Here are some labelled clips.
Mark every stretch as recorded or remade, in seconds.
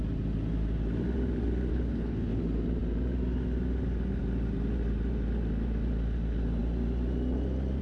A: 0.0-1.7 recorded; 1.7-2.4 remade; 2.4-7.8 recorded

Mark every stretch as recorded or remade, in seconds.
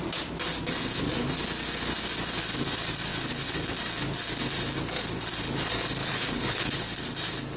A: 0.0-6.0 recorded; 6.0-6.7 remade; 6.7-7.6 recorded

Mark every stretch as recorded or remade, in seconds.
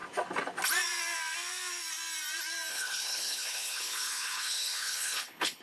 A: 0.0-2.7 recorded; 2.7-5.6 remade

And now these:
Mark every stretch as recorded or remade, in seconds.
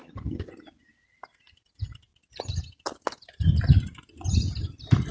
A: 0.0-0.5 remade; 0.5-5.1 recorded